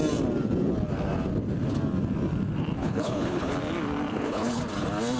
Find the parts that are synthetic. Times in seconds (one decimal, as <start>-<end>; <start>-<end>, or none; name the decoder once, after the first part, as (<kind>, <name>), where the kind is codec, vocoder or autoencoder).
2.8-3.5 (codec, HILCodec); 4.1-4.6

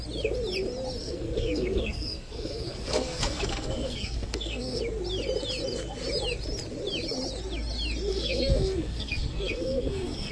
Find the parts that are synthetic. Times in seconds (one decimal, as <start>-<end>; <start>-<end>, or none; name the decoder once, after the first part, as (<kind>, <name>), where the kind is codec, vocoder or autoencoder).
1.0-4.8 (codec, SNAC); 8.1-10.3

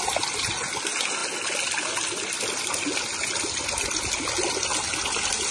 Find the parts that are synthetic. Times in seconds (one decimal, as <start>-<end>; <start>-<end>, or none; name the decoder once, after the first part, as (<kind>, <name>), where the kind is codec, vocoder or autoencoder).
none

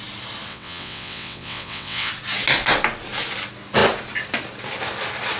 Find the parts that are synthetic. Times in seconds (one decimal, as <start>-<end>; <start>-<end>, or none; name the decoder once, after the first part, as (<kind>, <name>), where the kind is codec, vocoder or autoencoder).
0.5-2.1 (vocoder, WaveNeXt)

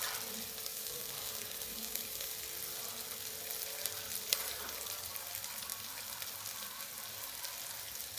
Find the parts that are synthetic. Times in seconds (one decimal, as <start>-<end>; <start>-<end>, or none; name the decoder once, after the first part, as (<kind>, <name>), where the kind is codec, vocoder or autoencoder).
0.7-2.4 (codec, DAC)

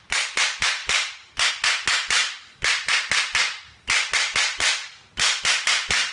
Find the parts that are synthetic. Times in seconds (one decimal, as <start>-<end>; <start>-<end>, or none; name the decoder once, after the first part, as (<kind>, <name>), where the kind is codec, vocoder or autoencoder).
0.8-1.5 (vocoder, BigVGAN v2); 2.2-2.9; 4.8-5.4

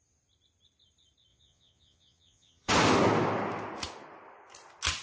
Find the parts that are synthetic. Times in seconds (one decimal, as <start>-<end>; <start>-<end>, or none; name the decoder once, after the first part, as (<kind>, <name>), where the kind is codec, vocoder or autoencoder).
1.3-2.7 (vocoder, Vocos)